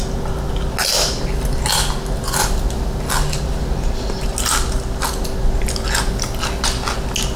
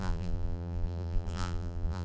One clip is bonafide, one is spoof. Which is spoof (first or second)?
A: second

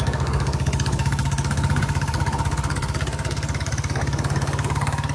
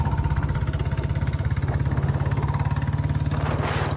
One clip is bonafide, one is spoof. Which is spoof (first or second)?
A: first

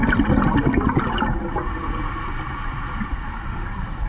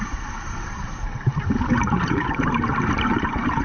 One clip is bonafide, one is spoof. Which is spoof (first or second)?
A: second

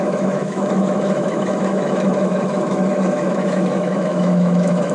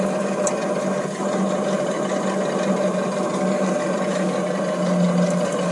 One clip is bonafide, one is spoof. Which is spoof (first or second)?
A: first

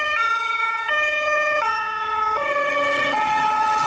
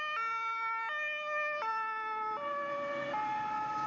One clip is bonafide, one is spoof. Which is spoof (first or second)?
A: first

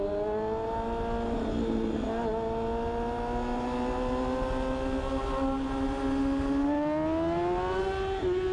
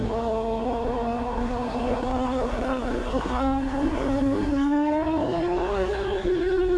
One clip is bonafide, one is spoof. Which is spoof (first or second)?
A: second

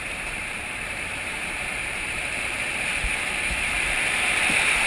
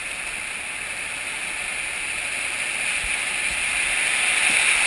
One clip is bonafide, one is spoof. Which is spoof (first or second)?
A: first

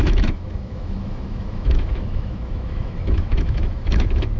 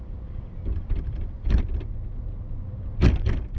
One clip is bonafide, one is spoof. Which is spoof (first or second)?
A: first